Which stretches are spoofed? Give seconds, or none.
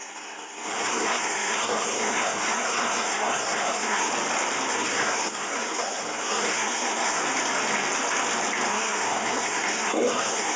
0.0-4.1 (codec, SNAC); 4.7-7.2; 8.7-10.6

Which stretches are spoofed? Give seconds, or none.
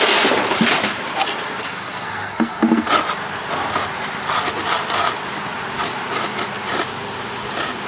1.6-2.9 (codec, SNAC)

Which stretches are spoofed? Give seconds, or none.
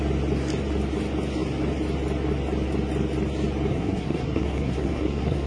3.7-5.5 (codec, SNAC)